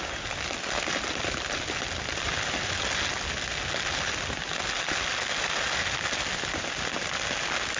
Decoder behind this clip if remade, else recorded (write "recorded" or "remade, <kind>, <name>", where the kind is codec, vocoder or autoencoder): recorded